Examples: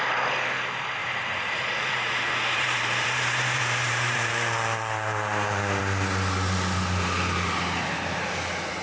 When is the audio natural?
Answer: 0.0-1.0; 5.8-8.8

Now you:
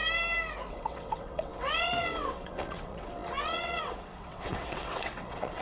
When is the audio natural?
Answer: 0.0-0.7

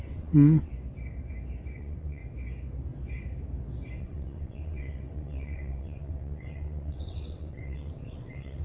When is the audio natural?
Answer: 0.7-1.8; 2.2-4.0

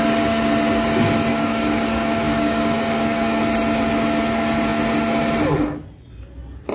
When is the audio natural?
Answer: 0.0-1.3; 3.4-6.7

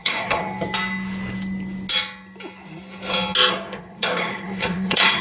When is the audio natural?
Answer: 0.4-3.5

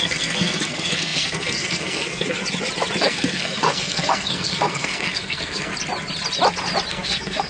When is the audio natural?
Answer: 2.4-3.0; 5.7-6.9

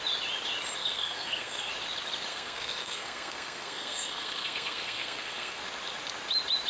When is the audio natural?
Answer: 0.0-0.8; 1.7-2.3; 5.6-6.7

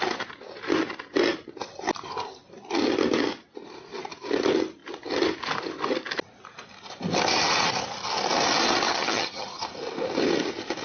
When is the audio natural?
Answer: 0.0-8.9; 9.6-10.8